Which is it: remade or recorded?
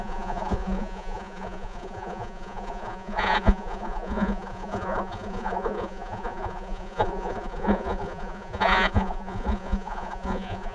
remade